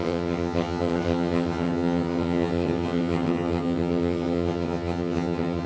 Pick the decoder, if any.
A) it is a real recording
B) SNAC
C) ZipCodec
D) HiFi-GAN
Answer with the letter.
D